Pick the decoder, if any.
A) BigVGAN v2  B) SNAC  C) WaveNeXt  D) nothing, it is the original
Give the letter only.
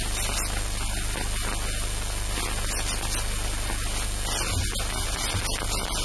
D